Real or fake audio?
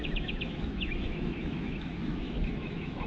fake